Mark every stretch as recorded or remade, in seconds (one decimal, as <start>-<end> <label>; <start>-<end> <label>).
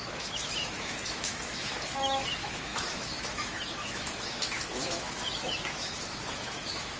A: 0.0-7.0 remade